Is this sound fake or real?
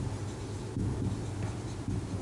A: real